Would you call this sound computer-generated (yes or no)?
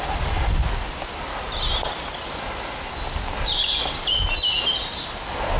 no